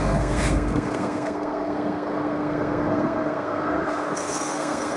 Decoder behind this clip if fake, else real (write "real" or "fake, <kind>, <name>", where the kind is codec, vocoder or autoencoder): fake, codec, SNAC